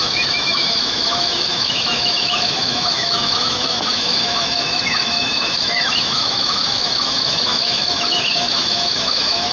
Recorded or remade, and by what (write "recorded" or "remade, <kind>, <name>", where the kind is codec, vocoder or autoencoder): remade, autoencoder, DAC-VAE